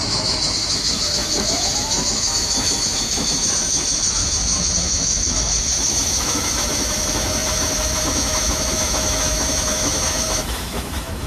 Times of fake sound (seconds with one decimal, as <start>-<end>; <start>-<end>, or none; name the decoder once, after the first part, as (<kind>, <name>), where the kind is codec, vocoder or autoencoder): 0.0-11.3 (autoencoder, DAC-VAE)